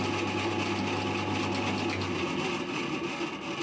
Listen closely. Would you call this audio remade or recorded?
recorded